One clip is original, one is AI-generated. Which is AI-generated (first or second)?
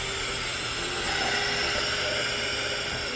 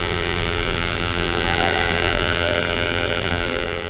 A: second